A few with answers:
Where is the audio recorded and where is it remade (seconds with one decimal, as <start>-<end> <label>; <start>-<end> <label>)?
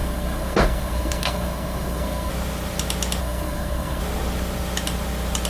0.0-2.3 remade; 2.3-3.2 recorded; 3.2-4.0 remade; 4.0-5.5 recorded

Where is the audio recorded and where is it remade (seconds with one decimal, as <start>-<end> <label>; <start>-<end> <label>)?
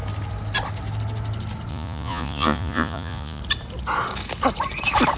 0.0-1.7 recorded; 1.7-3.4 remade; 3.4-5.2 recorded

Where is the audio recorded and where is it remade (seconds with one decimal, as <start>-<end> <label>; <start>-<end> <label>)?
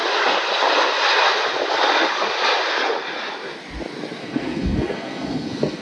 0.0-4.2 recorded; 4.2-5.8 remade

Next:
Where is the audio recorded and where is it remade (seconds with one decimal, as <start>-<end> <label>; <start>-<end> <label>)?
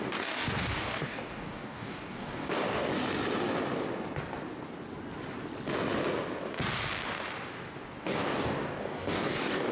0.0-2.9 remade; 2.9-8.0 recorded; 8.0-9.7 remade